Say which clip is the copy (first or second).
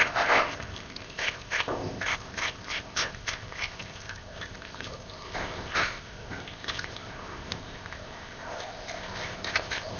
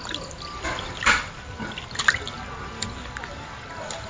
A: first